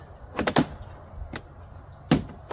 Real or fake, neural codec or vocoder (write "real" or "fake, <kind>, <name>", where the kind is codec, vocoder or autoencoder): real